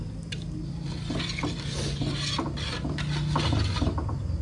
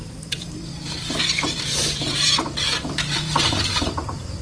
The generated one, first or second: second